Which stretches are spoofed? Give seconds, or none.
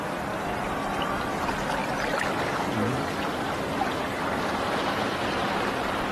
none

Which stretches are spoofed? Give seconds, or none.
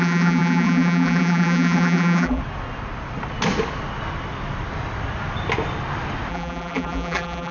0.0-2.4 (vocoder, BigVGAN v2); 6.3-7.5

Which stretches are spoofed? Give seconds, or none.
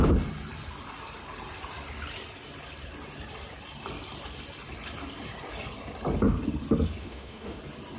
7.0-7.6 (autoencoder, DAC-VAE)